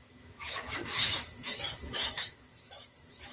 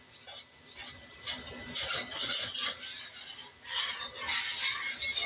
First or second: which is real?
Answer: second